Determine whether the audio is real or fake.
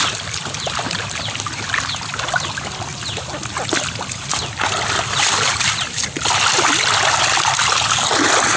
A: real